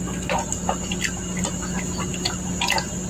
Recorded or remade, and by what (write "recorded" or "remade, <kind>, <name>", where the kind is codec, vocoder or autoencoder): recorded